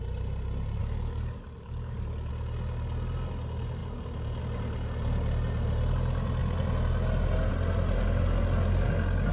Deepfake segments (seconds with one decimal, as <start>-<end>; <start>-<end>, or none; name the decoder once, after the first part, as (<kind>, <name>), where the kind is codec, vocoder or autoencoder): 0.8-2.3 (codec, DAC)